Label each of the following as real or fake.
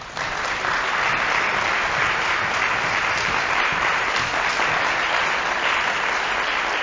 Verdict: real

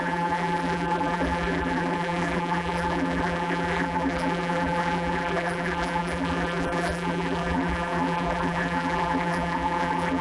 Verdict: fake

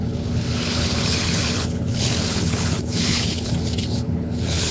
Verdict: fake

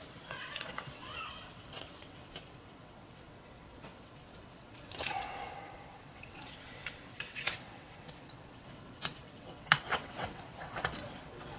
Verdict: fake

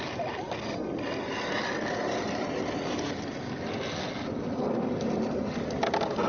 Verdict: real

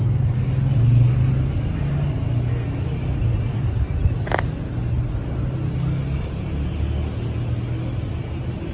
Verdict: real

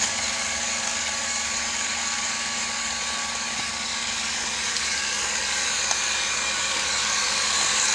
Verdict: fake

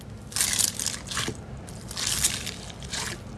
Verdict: real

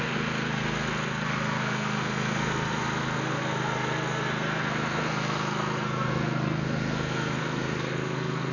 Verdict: fake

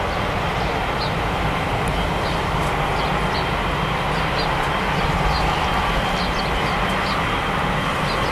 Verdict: real